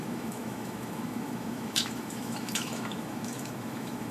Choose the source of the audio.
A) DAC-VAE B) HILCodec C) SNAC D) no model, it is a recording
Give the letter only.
A